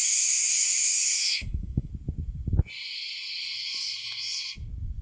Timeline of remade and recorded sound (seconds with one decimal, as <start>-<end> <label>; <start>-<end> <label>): 0.0-1.9 remade; 1.9-5.0 recorded